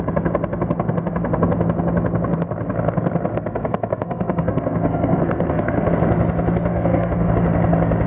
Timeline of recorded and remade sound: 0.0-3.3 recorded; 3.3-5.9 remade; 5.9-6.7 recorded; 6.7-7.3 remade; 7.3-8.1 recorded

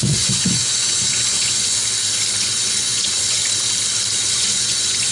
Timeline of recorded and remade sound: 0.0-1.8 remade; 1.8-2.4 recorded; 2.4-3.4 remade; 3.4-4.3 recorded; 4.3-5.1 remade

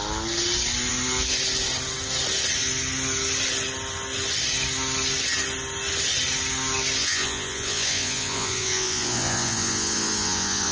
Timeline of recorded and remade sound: 0.0-7.0 recorded; 7.0-10.7 remade

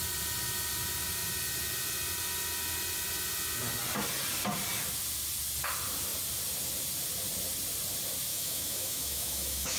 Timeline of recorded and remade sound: 0.0-8.3 recorded; 8.3-9.8 remade

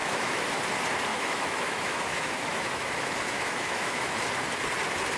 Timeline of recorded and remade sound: 0.0-0.6 remade; 0.6-1.1 recorded; 1.1-4.2 remade; 4.2-5.2 recorded

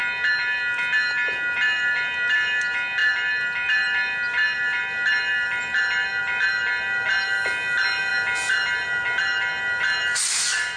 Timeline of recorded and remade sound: 0.0-10.8 recorded

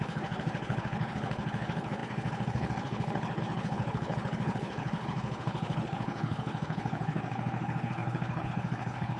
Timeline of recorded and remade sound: 0.0-9.2 remade

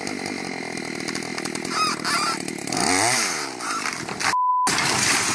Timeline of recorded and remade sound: 0.0-5.3 recorded